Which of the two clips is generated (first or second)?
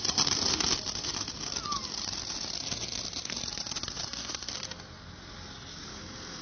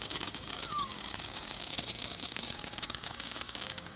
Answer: second